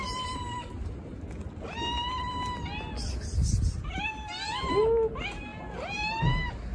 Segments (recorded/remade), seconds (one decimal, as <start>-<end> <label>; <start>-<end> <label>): 0.0-6.7 recorded